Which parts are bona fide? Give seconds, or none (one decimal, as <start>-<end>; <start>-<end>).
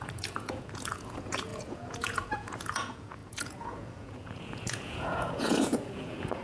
none